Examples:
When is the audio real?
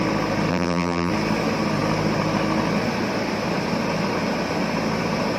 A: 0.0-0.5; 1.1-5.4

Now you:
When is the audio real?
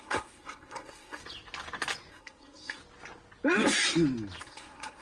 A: 1.2-2.1; 2.8-4.4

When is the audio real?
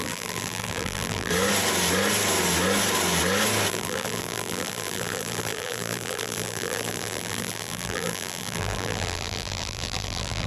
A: 1.3-3.7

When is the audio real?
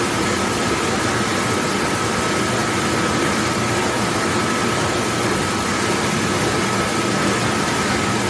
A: 0.0-8.3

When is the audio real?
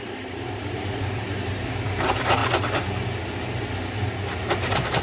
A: 2.4-3.6